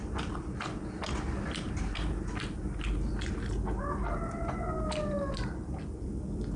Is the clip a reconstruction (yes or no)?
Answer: no